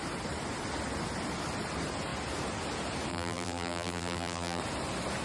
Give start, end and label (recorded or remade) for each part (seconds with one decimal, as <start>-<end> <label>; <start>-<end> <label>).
0.0-3.1 recorded; 3.1-4.6 remade; 4.6-5.2 recorded